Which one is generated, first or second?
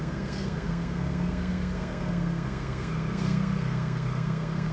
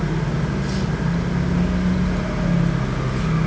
first